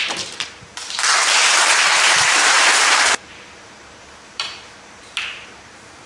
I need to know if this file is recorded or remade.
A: remade